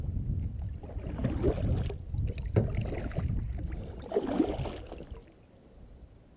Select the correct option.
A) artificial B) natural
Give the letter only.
B